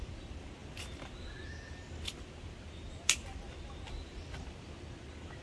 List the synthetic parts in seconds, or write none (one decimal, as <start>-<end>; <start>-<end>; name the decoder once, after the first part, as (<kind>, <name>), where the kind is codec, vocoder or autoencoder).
none